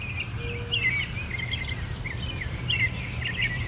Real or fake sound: real